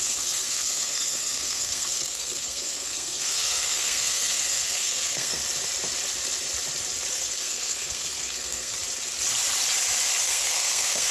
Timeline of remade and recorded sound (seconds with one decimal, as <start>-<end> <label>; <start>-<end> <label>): 0.0-5.4 remade; 5.4-7.1 recorded; 7.1-8.7 remade; 8.7-10.2 recorded; 10.2-11.1 remade